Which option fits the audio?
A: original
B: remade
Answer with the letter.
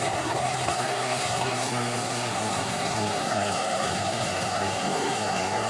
B